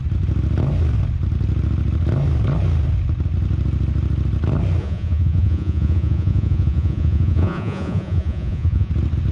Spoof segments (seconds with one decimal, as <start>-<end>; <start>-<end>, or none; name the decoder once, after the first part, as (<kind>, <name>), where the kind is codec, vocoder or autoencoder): 4.8-8.9 (vocoder, Vocos)